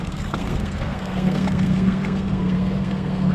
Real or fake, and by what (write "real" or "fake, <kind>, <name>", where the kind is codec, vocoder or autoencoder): fake, codec, SNAC